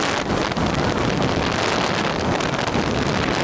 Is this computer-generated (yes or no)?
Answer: no